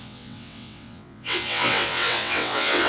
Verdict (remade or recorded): remade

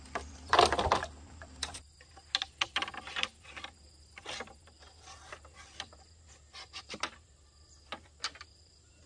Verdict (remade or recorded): recorded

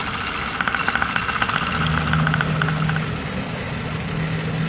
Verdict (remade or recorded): recorded